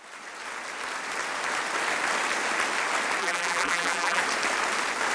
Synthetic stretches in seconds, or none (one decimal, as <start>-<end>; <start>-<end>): 3.2-4.2